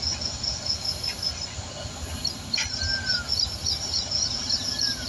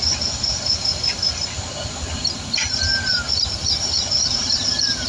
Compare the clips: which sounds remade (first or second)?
second